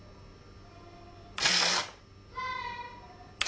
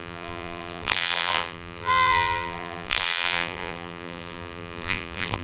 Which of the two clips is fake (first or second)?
second